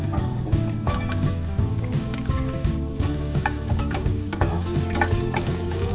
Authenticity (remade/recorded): remade